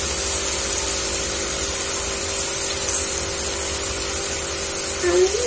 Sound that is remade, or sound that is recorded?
recorded